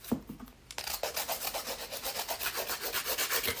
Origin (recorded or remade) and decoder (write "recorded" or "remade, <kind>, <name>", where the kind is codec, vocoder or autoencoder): recorded